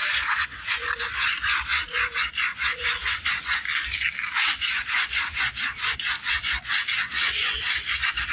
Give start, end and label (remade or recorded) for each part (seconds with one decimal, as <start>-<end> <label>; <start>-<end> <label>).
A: 0.0-3.7 remade; 3.7-4.3 recorded; 4.3-8.3 remade